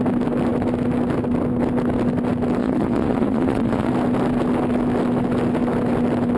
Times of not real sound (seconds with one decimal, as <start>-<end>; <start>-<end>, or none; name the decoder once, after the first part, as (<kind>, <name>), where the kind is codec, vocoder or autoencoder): 2.6-3.9 (vocoder, Vocos)